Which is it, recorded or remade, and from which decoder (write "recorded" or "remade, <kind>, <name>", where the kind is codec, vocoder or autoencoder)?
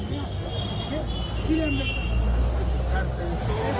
recorded